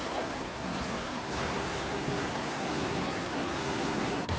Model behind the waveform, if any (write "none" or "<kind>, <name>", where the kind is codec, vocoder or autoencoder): codec, SNAC